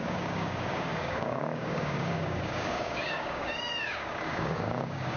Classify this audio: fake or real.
fake